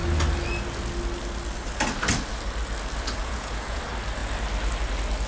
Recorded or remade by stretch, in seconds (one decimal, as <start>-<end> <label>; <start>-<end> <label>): 0.0-3.2 recorded; 3.2-3.8 remade; 3.8-5.3 recorded